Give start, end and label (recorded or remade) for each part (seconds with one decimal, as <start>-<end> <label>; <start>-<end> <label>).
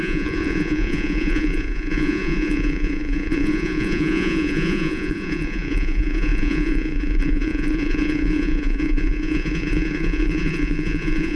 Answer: 0.0-11.4 remade